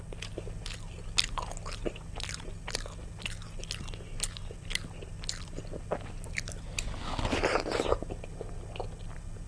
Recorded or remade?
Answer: recorded